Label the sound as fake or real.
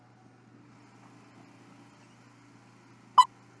real